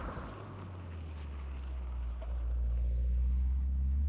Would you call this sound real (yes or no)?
yes